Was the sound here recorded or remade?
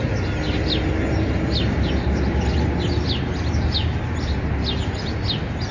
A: recorded